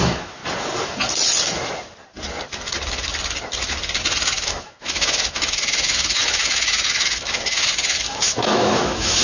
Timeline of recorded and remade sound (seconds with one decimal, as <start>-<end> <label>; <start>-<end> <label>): 0.0-0.4 remade; 0.4-4.5 recorded; 4.5-9.2 remade